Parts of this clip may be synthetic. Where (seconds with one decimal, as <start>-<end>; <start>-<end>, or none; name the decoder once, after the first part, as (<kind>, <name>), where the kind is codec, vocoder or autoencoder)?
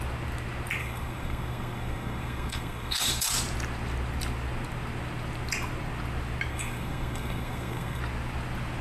0.8-3.3 (codec, SNAC); 6.5-8.0